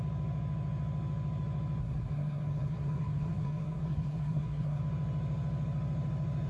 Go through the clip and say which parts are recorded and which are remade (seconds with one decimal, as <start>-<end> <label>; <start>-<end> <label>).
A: 0.0-1.8 recorded; 1.8-4.8 remade; 4.8-6.5 recorded